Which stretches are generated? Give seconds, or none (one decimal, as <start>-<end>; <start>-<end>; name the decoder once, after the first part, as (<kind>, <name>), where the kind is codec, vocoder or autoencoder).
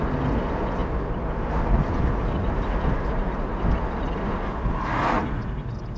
0.8-3.8 (vocoder, BigVGAN v2)